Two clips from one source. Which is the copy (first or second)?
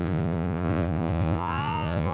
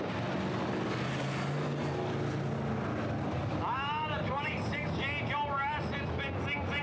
first